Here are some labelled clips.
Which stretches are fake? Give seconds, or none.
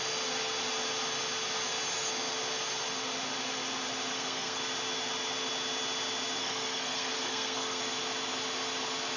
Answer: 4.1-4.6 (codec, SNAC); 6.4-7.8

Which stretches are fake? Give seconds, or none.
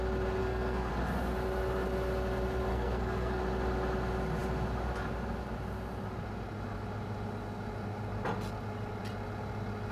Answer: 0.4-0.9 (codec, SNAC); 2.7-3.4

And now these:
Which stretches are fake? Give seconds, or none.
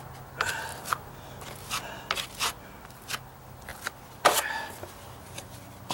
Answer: none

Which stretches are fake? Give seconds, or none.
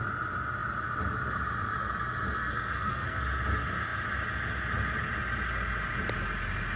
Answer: 2.4-3.2 (codec, SNAC)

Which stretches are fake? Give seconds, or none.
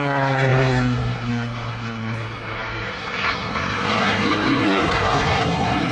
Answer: 0.0-5.9 (codec, SNAC)